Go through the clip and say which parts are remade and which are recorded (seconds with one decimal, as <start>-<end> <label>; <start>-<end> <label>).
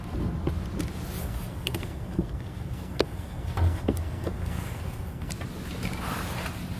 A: 0.0-1.2 recorded; 1.2-5.3 remade; 5.3-6.8 recorded